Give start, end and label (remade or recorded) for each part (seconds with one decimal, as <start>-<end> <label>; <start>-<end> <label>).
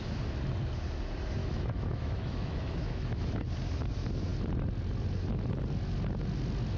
0.0-1.4 recorded; 1.4-3.4 remade; 3.4-6.8 recorded